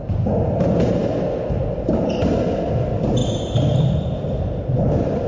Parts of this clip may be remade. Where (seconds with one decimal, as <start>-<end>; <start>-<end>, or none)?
none